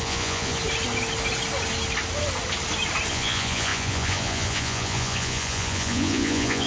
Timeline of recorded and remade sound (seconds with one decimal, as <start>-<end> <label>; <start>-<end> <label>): 0.0-0.6 remade; 0.6-3.1 recorded; 3.1-6.7 remade